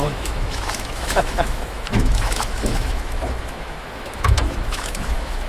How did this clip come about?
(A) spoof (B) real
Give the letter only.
A